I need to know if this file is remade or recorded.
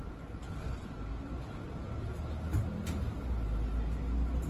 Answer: recorded